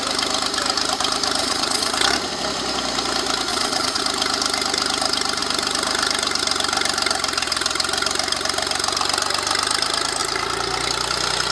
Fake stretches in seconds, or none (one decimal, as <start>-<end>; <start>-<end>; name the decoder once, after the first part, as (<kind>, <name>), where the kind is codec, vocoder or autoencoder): 1.4-1.9 (vocoder, Vocos); 3.5-4.0